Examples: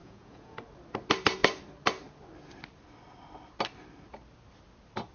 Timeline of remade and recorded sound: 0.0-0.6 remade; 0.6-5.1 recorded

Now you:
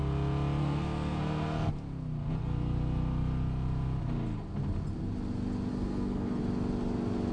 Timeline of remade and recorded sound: 0.0-0.6 recorded; 0.6-1.7 remade; 1.7-5.7 recorded; 5.7-6.4 remade; 6.4-7.3 recorded

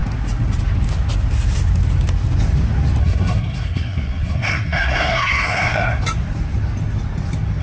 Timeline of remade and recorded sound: 0.0-3.0 recorded; 3.0-6.0 remade; 6.0-7.6 recorded